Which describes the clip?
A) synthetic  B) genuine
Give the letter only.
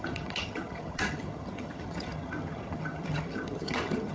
A